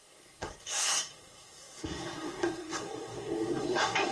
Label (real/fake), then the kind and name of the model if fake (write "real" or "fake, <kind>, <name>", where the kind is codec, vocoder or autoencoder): fake, codec, SNAC